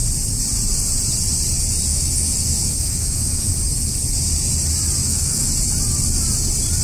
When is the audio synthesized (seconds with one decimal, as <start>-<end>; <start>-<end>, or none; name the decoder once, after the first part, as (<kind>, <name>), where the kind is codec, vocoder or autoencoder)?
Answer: 1.9-3.5 (autoencoder, DAC-VAE); 5.0-5.5